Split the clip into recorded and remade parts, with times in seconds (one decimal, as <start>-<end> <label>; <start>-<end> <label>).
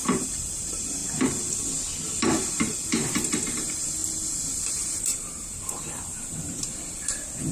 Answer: 0.0-1.0 remade; 1.0-2.5 recorded; 2.5-4.0 remade; 4.0-4.7 recorded; 4.7-7.5 remade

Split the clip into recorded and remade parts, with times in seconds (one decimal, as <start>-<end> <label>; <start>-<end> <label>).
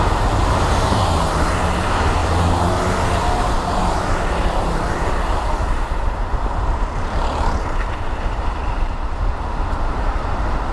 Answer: 0.0-10.7 remade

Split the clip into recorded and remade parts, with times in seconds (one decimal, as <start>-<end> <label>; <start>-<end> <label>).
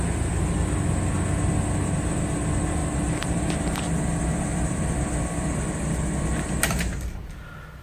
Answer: 0.0-2.8 recorded; 2.8-6.1 remade; 6.1-7.8 recorded